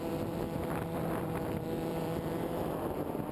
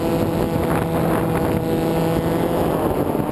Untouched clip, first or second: second